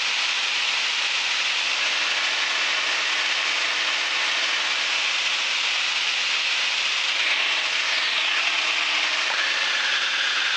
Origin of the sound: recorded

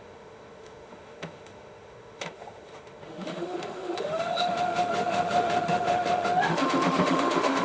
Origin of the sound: remade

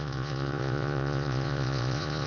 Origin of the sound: remade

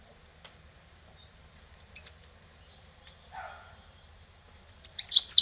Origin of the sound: remade